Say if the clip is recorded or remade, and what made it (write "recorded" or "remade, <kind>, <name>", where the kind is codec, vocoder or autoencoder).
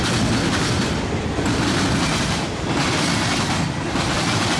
recorded